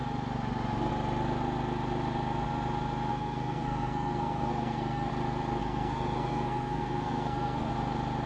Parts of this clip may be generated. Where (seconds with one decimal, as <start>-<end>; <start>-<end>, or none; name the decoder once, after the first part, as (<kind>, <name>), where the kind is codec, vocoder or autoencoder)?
3.1-5.1 (codec, SNAC); 5.6-7.7